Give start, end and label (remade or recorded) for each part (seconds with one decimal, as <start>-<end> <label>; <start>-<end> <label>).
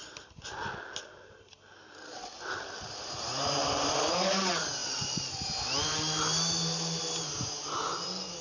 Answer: 0.0-8.4 recorded